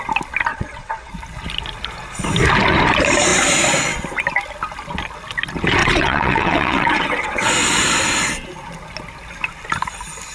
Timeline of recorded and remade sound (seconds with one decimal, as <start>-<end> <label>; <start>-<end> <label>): 0.0-0.5 recorded; 0.5-1.1 remade; 1.1-5.8 recorded; 5.8-7.5 remade; 7.5-10.3 recorded